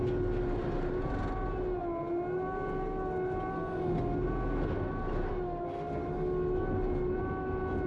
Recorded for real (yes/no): yes